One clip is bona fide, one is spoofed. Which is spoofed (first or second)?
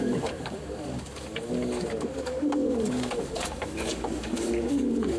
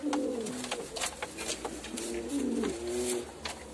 first